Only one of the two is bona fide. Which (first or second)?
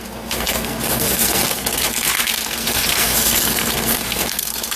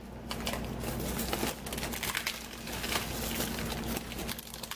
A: second